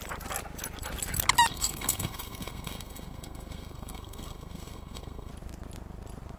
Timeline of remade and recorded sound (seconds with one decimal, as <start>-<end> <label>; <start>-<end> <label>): 0.0-1.5 recorded; 1.5-5.3 remade; 5.3-6.4 recorded